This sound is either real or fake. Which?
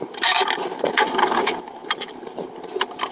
fake